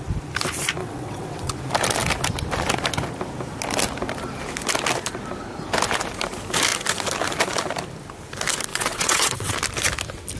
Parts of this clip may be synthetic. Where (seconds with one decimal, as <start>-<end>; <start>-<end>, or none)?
0.8-1.5; 8.7-9.5